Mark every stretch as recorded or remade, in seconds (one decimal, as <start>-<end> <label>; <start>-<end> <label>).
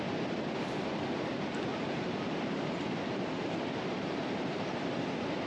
0.0-1.7 recorded; 1.7-5.0 remade; 5.0-5.5 recorded